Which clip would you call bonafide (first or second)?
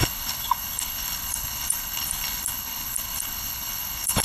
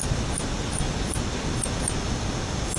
second